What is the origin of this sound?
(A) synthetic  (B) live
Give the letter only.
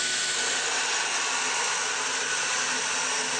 B